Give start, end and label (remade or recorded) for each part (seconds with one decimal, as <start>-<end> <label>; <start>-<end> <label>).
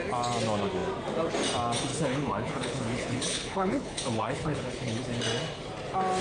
0.0-1.9 recorded; 1.9-5.0 remade; 5.0-6.2 recorded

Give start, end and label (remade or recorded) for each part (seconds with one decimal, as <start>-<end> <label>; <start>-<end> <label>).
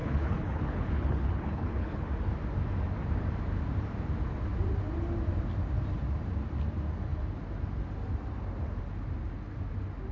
0.0-2.1 remade; 2.1-10.1 recorded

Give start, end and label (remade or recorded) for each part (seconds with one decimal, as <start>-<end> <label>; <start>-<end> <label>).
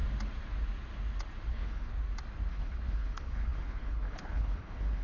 0.0-1.5 recorded; 1.5-1.9 remade; 1.9-2.5 recorded; 2.5-5.0 remade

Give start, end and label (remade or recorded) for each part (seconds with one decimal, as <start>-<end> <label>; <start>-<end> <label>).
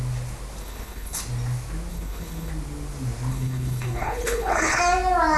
0.0-0.6 recorded; 0.6-1.2 remade; 1.2-1.9 recorded; 1.9-2.5 remade; 2.5-3.3 recorded; 3.3-4.8 remade; 4.8-5.4 recorded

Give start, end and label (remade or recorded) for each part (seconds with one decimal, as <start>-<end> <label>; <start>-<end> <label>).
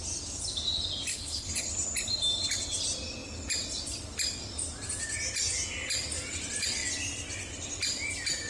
0.0-1.1 recorded; 1.1-1.7 remade; 1.7-8.5 recorded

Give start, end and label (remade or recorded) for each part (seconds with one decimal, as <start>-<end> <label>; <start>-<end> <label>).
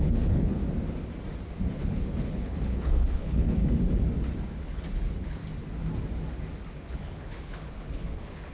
0.0-0.6 remade; 0.6-1.7 recorded; 1.7-3.6 remade; 3.6-4.6 recorded; 4.6-5.4 remade; 5.4-6.9 recorded; 6.9-8.5 remade